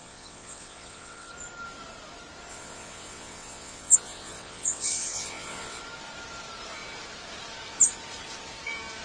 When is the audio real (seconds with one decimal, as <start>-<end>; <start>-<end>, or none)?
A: 1.3-2.5; 5.8-9.0